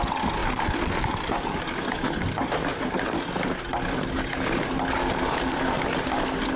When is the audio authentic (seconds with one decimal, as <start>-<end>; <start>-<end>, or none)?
0.0-6.6